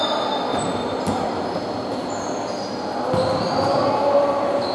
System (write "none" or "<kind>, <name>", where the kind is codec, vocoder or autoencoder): none